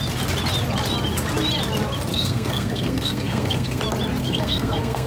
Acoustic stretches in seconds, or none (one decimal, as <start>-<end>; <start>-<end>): 0.0-2.1; 3.8-4.2